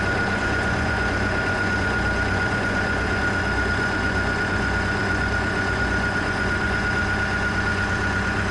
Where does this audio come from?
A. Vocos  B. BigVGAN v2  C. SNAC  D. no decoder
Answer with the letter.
A